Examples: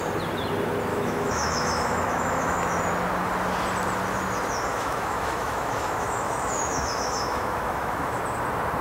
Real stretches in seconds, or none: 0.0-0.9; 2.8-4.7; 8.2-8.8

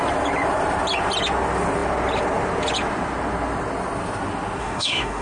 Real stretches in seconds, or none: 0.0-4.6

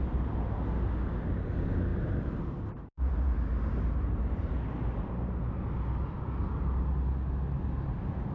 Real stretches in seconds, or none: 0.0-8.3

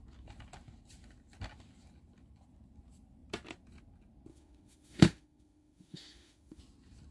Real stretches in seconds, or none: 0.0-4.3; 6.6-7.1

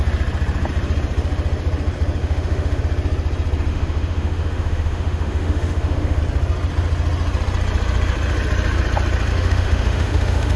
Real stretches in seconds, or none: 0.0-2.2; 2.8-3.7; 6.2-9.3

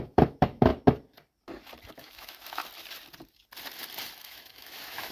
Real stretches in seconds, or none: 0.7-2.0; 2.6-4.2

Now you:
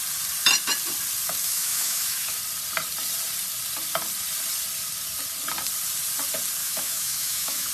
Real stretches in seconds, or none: 0.0-1.4; 2.4-6.6